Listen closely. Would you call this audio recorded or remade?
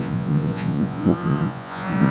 remade